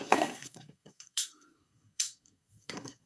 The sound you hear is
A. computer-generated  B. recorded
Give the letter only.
A